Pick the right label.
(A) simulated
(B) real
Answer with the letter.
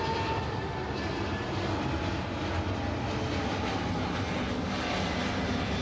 B